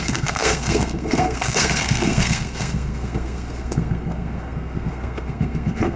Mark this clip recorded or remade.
remade